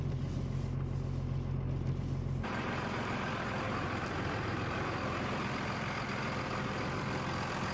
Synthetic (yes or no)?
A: no